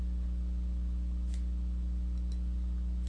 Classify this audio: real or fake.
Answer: real